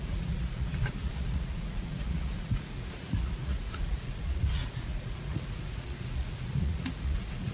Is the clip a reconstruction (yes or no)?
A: yes